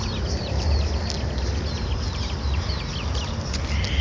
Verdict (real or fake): real